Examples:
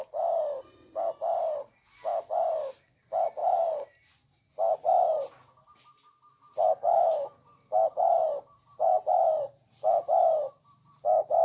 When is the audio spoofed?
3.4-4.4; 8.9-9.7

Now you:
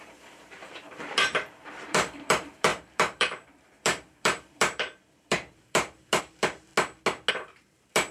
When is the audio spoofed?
0.0-6.7; 7.3-8.1

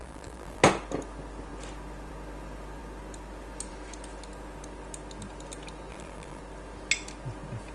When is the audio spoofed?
0.0-0.6; 5.9-6.4

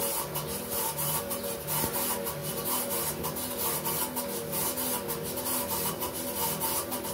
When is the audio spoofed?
none

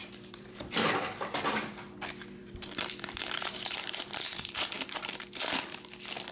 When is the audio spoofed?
0.0-1.0; 2.4-5.2

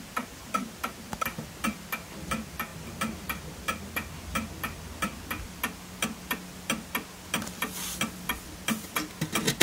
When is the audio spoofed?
none

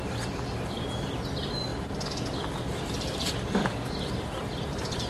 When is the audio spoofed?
none